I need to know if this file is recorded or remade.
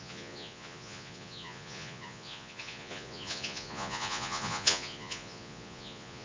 remade